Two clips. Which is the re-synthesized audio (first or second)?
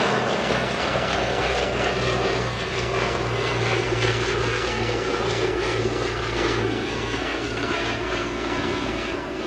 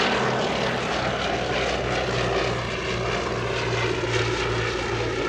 first